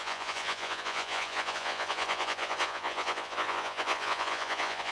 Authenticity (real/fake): fake